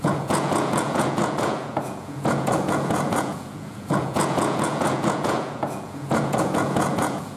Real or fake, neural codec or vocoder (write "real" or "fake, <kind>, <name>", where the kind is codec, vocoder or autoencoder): fake, vocoder, Vocos